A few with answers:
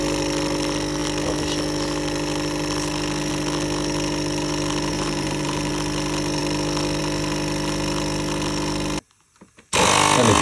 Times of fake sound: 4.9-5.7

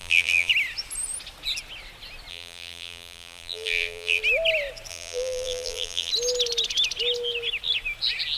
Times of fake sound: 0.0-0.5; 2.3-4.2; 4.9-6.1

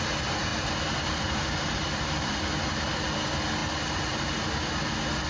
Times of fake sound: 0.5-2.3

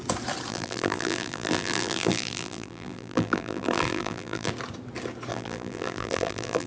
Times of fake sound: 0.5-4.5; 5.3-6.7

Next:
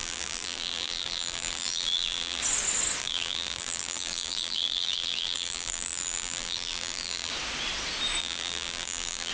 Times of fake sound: 0.0-2.4; 3.0-7.3; 8.2-9.3

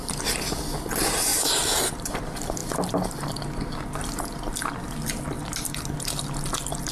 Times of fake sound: 1.3-2.1

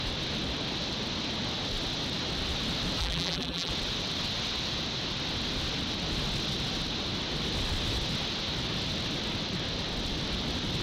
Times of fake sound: 3.0-3.7